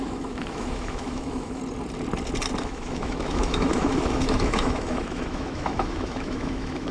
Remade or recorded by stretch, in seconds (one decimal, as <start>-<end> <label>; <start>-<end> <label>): 0.0-1.6 remade; 1.6-2.6 recorded; 2.6-6.9 remade

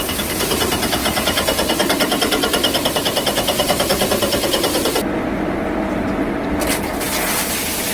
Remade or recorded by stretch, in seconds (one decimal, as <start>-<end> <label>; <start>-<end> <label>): 0.0-1.0 recorded; 1.0-5.6 remade; 5.6-7.9 recorded